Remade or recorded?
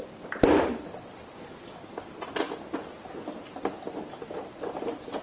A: recorded